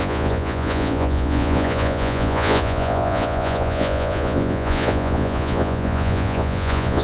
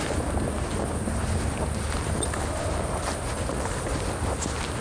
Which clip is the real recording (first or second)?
second